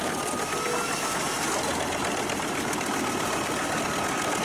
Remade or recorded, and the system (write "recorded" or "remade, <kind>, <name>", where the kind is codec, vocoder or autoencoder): recorded